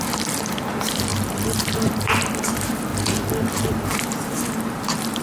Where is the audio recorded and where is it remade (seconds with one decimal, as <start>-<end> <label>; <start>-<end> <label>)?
0.0-2.9 remade; 2.9-3.8 recorded; 3.8-5.2 remade